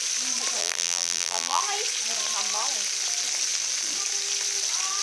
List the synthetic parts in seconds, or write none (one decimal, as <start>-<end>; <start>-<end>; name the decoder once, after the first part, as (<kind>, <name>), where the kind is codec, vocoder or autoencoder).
0.6-1.6 (vocoder, BigVGAN v2)